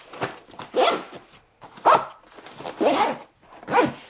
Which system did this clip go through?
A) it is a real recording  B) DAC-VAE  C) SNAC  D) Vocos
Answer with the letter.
A